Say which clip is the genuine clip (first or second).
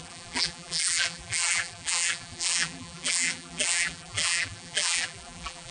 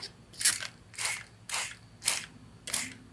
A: second